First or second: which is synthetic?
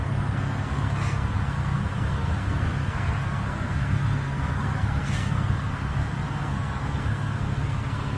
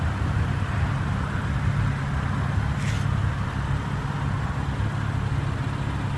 first